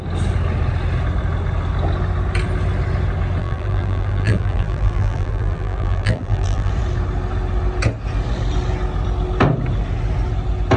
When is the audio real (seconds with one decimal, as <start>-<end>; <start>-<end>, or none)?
0.0-3.4; 6.7-10.8